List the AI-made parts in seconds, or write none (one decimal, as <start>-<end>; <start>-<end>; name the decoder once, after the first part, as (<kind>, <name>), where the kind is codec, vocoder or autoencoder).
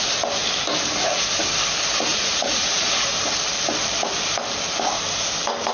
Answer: 2.1-3.1 (vocoder, Vocos)